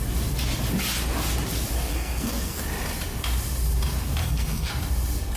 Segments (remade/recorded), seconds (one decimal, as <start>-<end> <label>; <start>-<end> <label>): 0.0-1.9 recorded; 1.9-2.6 remade; 2.6-4.2 recorded; 4.2-4.7 remade; 4.7-5.4 recorded